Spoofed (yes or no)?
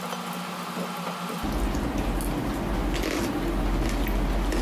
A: no